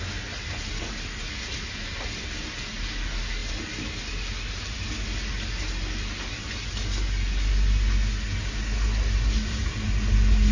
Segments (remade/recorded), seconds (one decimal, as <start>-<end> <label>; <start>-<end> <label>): 0.0-10.5 recorded